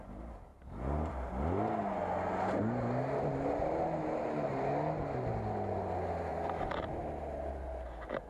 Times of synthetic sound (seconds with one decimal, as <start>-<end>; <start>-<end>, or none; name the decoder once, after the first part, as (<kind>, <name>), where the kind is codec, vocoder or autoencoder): 6.3-7.5 (vocoder, BigVGAN v2)